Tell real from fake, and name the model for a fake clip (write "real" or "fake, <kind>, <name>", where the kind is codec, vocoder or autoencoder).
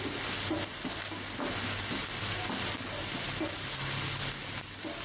real